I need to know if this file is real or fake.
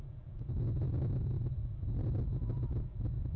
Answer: real